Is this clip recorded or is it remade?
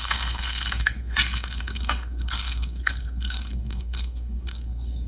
remade